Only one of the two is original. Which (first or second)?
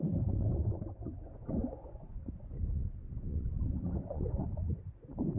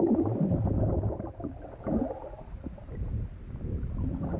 second